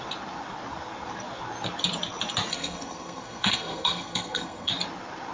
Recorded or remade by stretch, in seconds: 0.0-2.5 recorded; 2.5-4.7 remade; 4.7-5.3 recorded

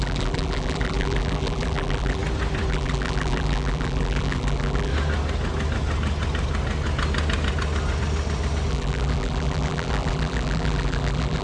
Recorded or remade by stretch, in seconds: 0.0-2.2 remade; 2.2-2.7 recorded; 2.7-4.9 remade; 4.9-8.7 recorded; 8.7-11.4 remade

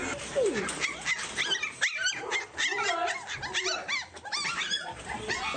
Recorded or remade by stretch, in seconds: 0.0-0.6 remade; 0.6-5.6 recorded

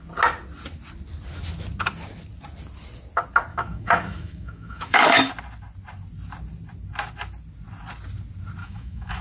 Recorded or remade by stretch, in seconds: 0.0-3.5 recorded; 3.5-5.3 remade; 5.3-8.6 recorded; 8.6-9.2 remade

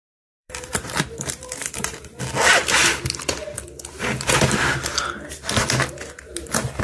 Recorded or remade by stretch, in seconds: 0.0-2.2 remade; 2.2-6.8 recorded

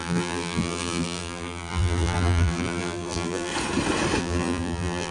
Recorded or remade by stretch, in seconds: 0.0-3.5 remade; 3.5-4.2 recorded; 4.2-5.1 remade

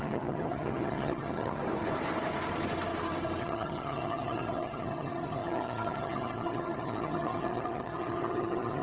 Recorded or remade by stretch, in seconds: 0.0-1.6 remade; 1.6-3.4 recorded; 3.4-8.8 remade

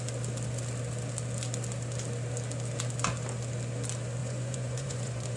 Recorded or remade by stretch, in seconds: 0.0-4.2 recorded; 4.2-5.4 remade